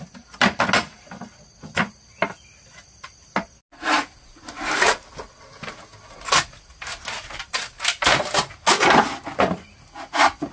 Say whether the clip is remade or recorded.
recorded